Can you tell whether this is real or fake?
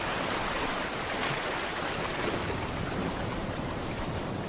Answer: fake